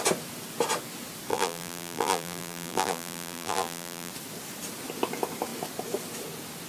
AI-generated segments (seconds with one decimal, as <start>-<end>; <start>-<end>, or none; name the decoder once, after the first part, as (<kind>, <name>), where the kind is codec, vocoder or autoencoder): 1.3-4.1 (vocoder, BigVGAN v2)